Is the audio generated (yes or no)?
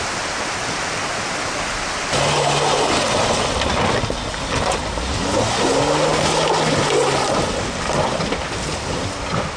no